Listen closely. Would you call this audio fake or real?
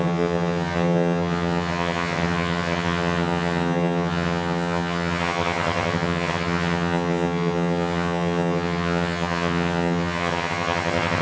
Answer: fake